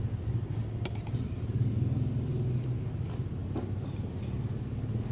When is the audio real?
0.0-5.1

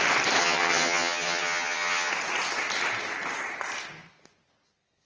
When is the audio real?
0.0-0.4; 2.1-5.1

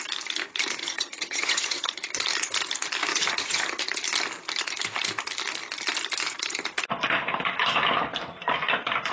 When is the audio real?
0.0-0.8; 1.9-3.1; 3.8-9.1

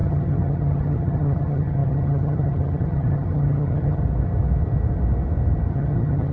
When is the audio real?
4.0-5.7

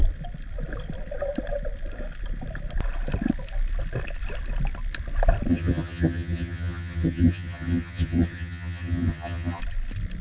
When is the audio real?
0.0-5.5; 9.6-10.2

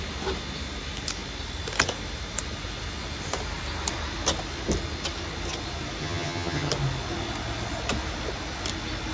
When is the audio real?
0.0-6.0; 6.7-9.1

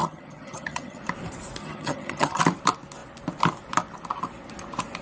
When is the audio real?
1.0-1.6; 2.4-5.0